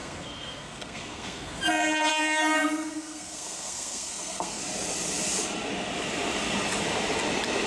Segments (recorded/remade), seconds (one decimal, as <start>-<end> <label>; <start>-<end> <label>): 0.0-1.6 remade; 1.6-2.1 recorded; 2.1-4.6 remade; 4.6-7.7 recorded